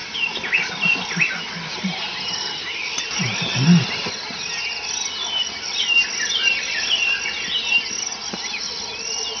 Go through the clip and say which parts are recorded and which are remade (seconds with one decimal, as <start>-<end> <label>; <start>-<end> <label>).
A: 0.0-9.4 recorded